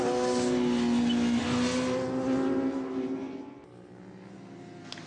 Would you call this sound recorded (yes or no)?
yes